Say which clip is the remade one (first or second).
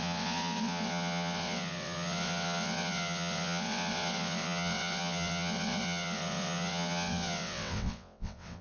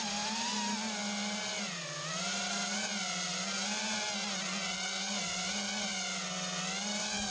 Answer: first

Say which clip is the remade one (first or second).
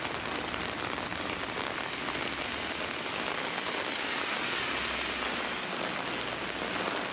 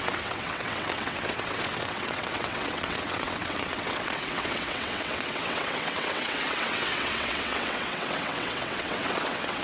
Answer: second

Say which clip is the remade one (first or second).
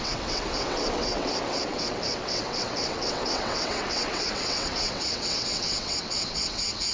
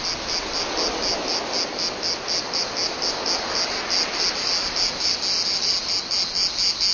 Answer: first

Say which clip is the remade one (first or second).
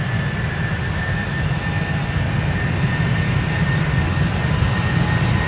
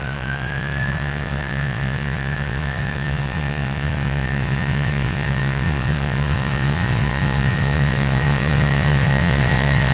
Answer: second